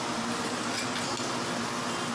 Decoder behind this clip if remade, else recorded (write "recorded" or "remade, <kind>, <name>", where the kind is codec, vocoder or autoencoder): recorded